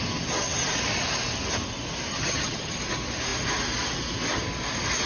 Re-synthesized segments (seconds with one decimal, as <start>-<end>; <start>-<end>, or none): 2.1-2.8